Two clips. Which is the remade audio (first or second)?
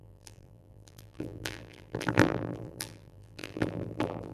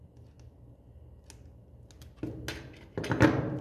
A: first